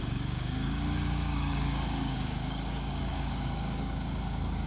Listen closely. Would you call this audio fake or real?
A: fake